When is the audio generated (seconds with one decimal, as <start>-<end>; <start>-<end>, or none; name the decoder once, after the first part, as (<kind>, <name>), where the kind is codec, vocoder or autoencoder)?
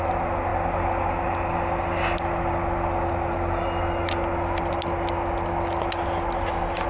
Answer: none